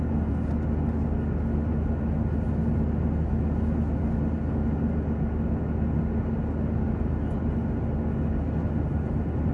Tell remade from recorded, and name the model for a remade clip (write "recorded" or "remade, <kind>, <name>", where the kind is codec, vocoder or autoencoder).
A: recorded